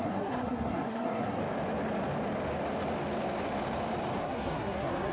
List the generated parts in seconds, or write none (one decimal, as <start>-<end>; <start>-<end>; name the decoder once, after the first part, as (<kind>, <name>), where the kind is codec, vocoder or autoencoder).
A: 0.0-1.4 (codec, SNAC); 4.2-5.1

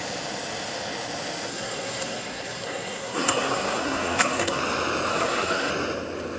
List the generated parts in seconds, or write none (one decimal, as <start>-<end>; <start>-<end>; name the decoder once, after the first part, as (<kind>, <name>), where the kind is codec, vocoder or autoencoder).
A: 1.5-4.6 (codec, SNAC); 5.1-5.7

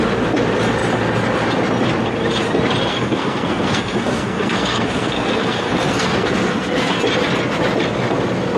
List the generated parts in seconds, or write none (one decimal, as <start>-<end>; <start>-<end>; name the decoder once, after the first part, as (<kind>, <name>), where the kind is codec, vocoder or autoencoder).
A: 2.9-7.0 (codec, SNAC)

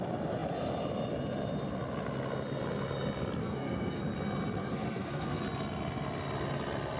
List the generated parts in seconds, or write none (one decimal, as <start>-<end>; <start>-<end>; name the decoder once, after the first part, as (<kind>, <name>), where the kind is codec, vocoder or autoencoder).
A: 3.4-4.0 (codec, SNAC); 4.6-5.4

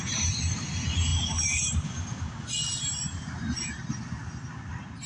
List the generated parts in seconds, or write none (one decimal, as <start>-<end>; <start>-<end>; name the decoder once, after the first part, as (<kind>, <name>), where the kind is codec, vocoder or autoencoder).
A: none

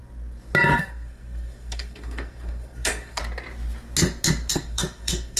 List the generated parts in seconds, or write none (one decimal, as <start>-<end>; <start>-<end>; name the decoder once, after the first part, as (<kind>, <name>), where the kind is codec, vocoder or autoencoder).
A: 0.7-3.2 (codec, SNAC); 4.5-5.4

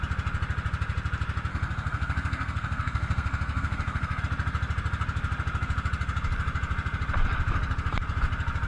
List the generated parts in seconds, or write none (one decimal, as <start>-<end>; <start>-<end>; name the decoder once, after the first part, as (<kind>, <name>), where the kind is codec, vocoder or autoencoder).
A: 1.5-4.2 (codec, SNAC)

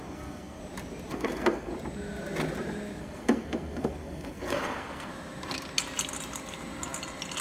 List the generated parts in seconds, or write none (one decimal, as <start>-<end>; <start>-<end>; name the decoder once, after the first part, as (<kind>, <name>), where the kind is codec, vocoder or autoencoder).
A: 0.0-0.6 (codec, SNAC); 1.1-1.7; 3.0-5.1